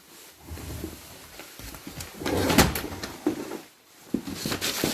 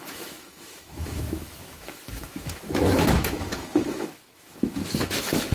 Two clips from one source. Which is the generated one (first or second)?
second